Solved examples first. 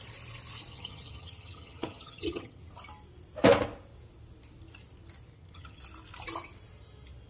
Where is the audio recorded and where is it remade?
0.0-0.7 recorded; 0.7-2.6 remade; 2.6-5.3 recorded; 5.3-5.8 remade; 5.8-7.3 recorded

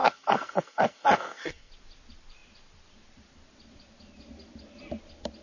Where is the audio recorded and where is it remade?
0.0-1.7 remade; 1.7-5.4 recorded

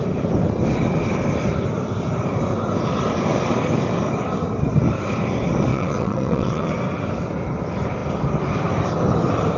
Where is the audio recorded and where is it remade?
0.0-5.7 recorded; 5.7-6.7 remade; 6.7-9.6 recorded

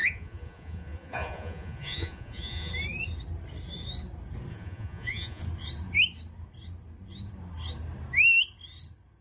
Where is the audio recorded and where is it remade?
0.0-2.7 remade; 2.7-4.5 recorded; 4.5-5.4 remade; 5.4-9.2 recorded

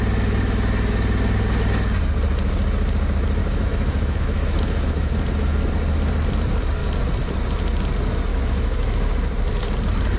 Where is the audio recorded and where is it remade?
0.0-3.4 recorded; 3.4-5.1 remade; 5.1-8.3 recorded; 8.3-9.1 remade; 9.1-10.2 recorded

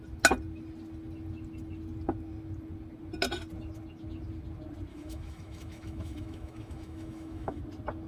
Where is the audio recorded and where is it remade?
0.0-4.9 recorded; 4.9-7.6 remade; 7.6-8.1 recorded

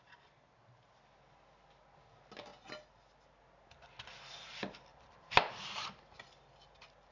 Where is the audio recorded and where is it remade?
0.0-4.9 recorded; 4.9-6.2 remade; 6.2-7.1 recorded